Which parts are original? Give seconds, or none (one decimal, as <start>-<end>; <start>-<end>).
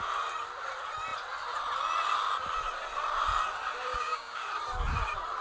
0.0-3.9; 4.5-5.4